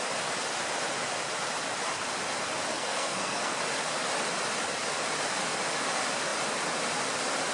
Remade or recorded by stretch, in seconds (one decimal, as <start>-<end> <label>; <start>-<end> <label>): 0.0-2.7 recorded; 2.7-3.6 remade; 3.6-7.5 recorded